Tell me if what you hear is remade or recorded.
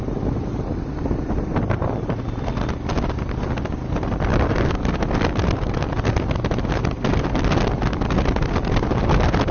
recorded